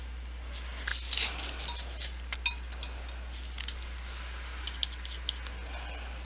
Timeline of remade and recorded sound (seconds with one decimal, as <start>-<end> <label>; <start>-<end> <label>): 0.0-6.2 recorded